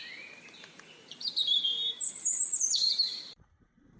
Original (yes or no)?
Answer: no